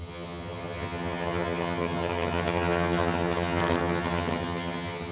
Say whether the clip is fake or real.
fake